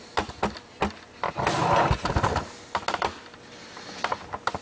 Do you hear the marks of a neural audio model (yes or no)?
no